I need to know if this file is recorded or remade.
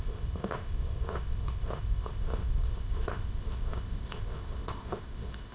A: remade